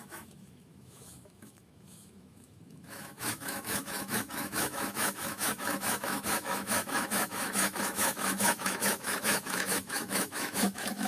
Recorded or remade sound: remade